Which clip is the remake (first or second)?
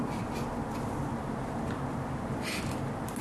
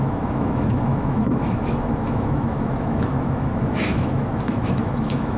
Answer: second